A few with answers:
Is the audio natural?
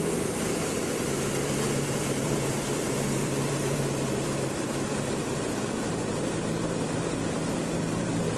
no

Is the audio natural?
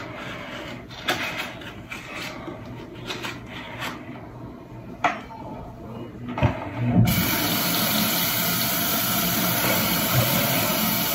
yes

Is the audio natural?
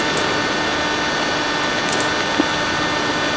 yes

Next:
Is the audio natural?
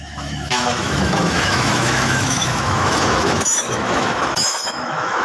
no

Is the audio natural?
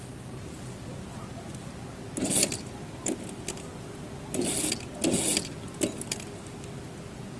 yes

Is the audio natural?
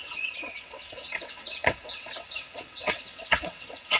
no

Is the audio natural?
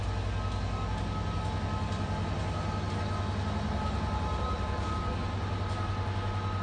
yes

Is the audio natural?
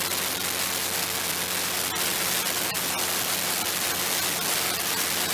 yes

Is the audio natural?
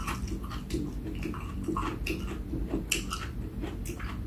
yes